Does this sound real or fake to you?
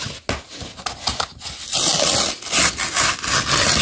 real